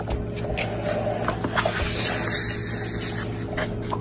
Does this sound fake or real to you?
real